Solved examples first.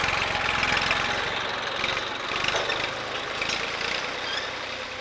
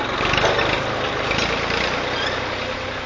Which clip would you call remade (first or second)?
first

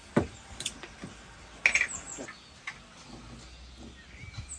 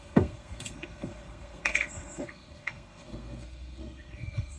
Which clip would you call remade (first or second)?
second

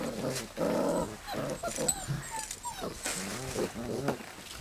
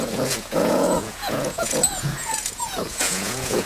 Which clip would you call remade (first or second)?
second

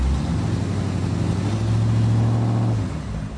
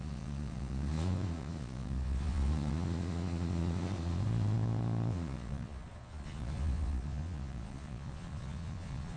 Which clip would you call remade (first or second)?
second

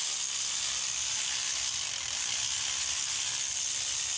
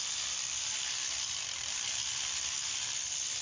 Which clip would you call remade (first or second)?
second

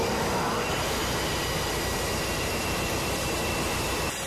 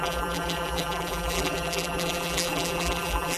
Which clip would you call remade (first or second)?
second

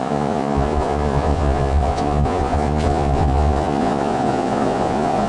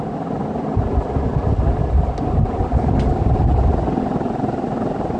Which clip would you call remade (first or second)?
first